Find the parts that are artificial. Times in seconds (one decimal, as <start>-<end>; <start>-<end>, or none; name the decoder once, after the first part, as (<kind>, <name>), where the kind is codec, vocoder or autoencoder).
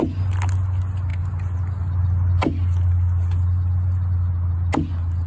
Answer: none